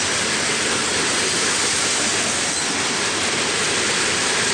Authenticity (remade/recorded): recorded